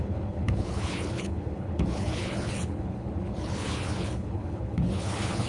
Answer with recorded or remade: remade